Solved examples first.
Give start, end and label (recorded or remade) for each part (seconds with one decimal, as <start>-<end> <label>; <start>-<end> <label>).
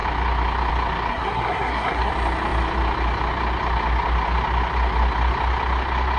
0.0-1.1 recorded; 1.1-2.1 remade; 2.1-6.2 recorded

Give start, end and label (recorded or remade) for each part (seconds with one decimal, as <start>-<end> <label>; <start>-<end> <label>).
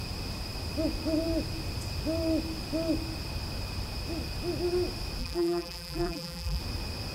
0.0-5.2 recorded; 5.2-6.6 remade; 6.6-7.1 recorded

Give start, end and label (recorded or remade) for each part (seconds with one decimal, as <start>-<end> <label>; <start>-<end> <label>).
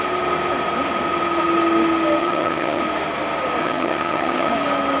0.0-2.2 recorded; 2.2-2.8 remade; 2.8-3.6 recorded; 3.6-4.5 remade; 4.5-5.0 recorded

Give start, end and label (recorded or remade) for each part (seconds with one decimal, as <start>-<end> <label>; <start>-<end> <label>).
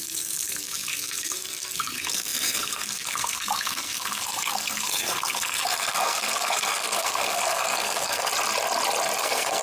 0.0-8.3 remade; 8.3-9.2 recorded; 9.2-9.6 remade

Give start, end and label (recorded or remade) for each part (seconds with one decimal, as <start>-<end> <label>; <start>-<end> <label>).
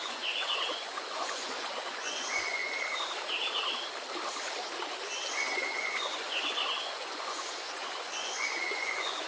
0.0-2.6 remade; 2.6-5.3 recorded; 5.3-9.3 remade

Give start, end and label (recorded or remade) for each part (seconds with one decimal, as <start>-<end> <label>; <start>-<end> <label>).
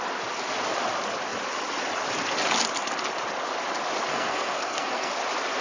0.0-4.1 recorded; 4.1-5.1 remade; 5.1-5.6 recorded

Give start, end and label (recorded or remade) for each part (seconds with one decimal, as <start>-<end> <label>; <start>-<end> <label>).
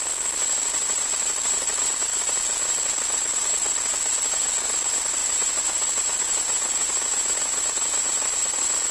0.0-5.2 remade; 5.2-8.4 recorded; 8.4-8.9 remade